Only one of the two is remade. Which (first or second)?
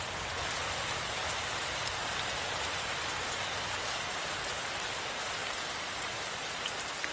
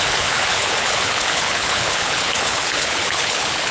second